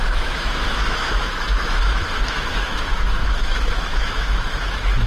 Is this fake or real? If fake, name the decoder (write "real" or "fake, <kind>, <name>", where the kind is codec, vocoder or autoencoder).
fake, autoencoder, DAC-VAE